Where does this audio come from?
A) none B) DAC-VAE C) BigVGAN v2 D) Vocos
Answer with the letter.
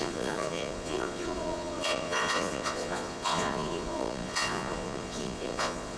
D